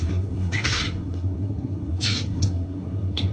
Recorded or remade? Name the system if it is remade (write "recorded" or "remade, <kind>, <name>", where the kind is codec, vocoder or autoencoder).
remade, codec, SNAC